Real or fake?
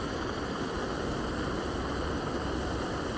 real